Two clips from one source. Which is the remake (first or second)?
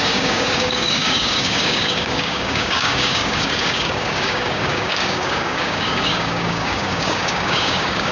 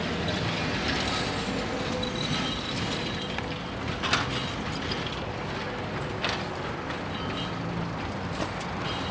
first